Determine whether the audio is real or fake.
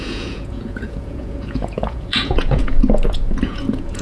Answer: fake